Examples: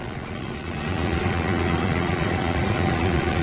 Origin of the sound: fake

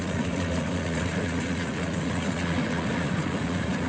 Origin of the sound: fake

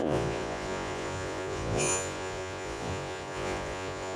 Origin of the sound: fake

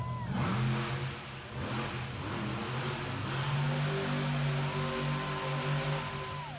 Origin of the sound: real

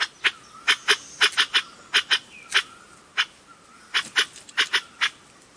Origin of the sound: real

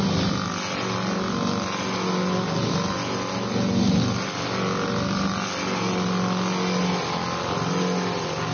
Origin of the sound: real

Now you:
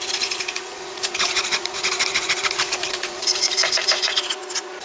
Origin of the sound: fake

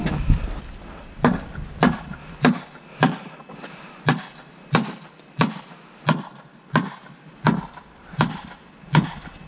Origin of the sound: real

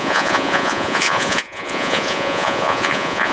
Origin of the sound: fake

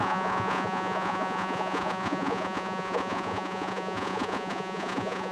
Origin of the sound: fake